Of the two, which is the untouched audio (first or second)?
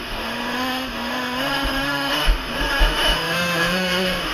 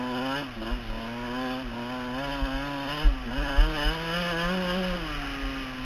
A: second